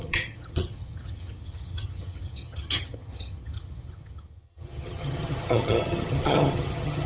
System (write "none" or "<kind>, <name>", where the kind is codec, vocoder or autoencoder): vocoder, HiFi-GAN